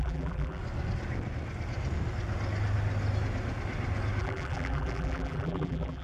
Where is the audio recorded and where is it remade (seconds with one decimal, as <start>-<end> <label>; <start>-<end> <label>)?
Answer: 0.0-0.6 remade; 0.6-4.2 recorded; 4.2-6.0 remade